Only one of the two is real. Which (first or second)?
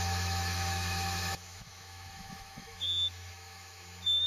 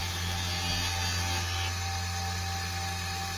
second